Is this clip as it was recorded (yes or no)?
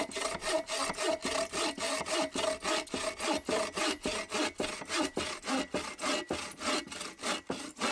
yes